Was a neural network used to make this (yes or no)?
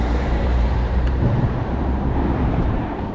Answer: yes